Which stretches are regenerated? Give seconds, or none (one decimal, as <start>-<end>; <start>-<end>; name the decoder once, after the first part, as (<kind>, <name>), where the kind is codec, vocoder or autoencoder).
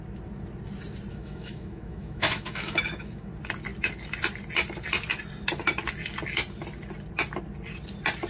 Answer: 1.1-3.3 (autoencoder, DAC-VAE)